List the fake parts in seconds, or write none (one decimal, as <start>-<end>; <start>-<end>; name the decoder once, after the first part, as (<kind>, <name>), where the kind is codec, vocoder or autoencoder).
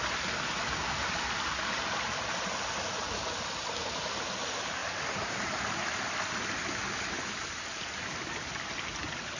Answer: none